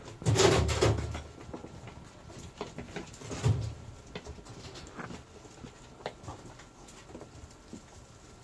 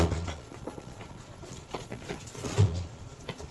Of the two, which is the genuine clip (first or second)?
first